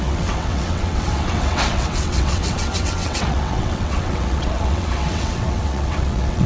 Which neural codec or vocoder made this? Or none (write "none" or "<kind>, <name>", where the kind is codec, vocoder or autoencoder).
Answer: vocoder, WaveNeXt